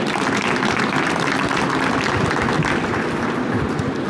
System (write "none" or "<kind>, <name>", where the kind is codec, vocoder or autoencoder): none